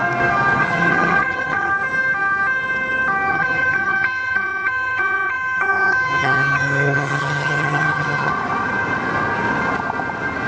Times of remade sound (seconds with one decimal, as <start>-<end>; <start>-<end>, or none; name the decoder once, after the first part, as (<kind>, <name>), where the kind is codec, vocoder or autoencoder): 0.6-1.7 (vocoder, HiFi-GAN); 3.3-8.3